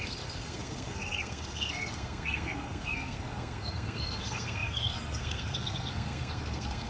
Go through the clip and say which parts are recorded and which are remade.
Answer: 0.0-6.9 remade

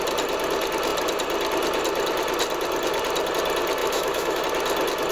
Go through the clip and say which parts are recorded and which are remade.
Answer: 0.0-3.8 recorded; 3.8-4.4 remade; 4.4-5.1 recorded

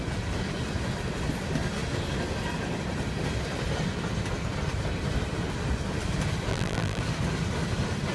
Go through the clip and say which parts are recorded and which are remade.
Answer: 0.0-6.5 recorded; 6.5-7.0 remade; 7.0-8.1 recorded

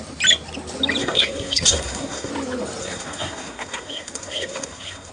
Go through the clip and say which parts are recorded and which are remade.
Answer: 0.0-1.0 recorded; 1.0-2.3 remade; 2.3-2.8 recorded; 2.8-5.1 remade

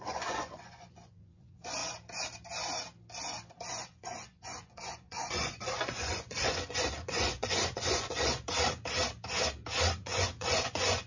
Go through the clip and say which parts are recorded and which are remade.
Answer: 0.0-1.8 remade; 1.8-3.7 recorded; 3.7-8.3 remade; 8.3-10.0 recorded; 10.0-11.1 remade

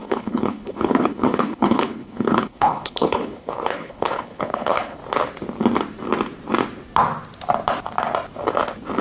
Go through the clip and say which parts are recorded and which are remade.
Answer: 0.0-5.0 remade; 5.0-9.0 recorded

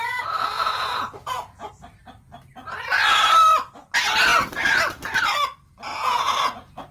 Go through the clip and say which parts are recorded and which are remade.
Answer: 0.0-1.7 remade; 1.7-5.9 recorded; 5.9-6.9 remade

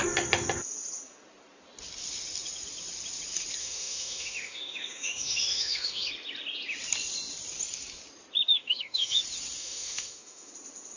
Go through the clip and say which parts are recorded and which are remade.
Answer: 0.0-3.6 recorded; 3.6-6.1 remade; 6.1-8.5 recorded; 8.5-9.2 remade; 9.2-9.6 recorded; 9.6-10.5 remade; 10.5-11.0 recorded